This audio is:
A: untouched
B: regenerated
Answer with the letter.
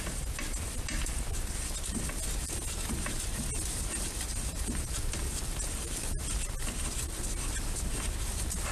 A